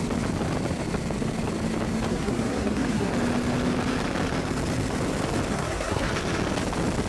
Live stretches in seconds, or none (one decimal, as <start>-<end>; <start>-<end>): 0.0-2.1; 3.1-5.5; 6.1-7.1